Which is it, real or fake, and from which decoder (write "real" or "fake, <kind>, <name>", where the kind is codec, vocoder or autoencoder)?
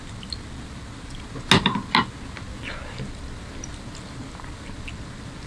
real